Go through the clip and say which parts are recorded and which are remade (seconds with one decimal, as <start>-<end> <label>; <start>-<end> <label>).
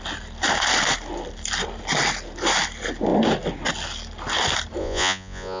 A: 0.0-4.8 recorded; 4.8-5.6 remade